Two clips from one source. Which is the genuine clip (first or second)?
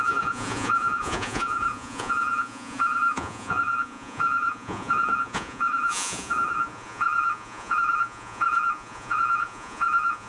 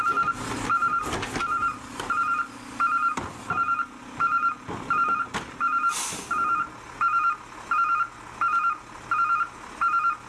second